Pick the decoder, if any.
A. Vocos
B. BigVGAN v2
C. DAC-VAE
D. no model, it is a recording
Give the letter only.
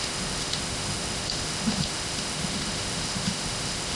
C